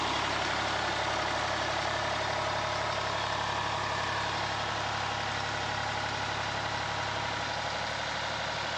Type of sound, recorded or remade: recorded